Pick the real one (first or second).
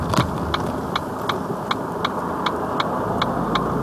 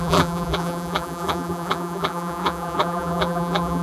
first